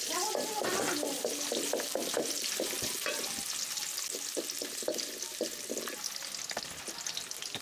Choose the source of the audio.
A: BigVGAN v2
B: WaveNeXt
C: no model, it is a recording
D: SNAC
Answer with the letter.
C